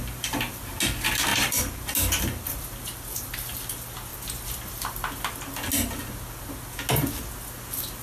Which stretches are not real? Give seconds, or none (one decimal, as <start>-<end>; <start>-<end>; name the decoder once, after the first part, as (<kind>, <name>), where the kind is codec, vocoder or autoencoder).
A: none